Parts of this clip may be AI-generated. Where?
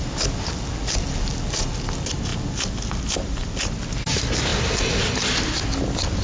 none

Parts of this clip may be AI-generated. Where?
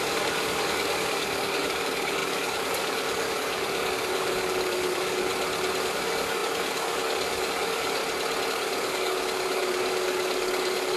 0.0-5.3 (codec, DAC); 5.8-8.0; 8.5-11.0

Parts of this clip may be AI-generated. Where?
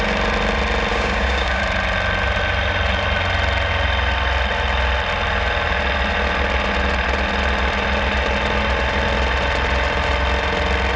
0.9-1.6 (codec, DAC)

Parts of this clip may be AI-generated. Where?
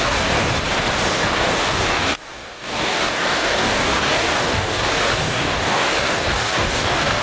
0.0-0.5 (codec, DAC); 1.1-7.2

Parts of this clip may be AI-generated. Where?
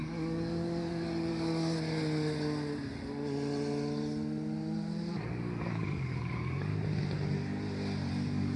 0.0-1.3 (codec, DAC); 5.1-6.7; 8.1-8.6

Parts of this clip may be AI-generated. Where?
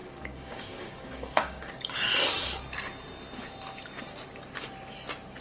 0.0-2.1 (codec, DAC)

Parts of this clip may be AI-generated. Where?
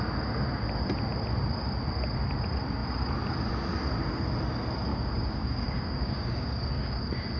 4.9-7.0 (codec, DAC)